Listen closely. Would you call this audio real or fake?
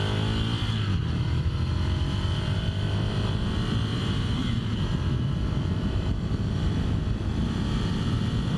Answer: fake